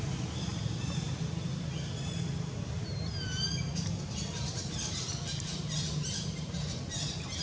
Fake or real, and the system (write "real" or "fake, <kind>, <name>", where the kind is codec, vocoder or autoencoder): real